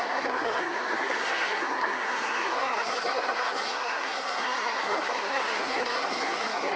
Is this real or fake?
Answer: fake